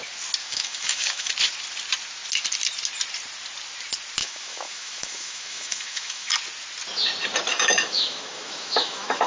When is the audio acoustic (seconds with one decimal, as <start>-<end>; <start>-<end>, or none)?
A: 0.0-0.4; 1.3-4.2; 6.3-7.5